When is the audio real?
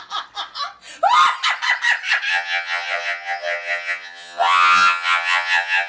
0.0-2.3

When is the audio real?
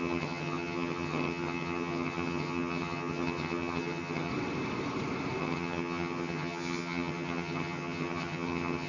4.3-5.4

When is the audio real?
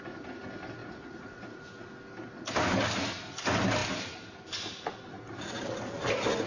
0.0-0.8; 1.7-6.5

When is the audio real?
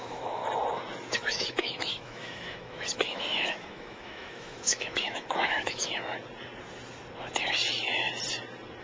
0.4-1.1; 6.1-8.8